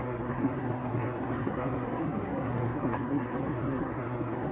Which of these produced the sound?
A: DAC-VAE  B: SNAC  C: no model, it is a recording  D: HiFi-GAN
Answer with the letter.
B